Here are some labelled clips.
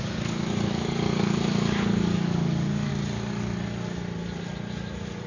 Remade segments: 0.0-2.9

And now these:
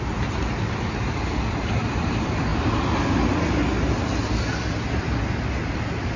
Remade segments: none

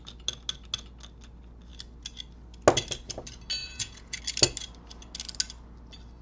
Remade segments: 3.6-4.2

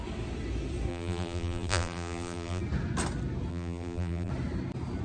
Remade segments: 0.9-2.6; 3.5-4.3